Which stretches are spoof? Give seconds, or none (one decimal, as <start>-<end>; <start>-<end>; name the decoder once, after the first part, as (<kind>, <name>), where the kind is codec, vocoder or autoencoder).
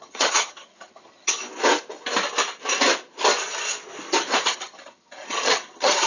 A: 0.0-1.4 (vocoder, HiFi-GAN); 4.4-6.1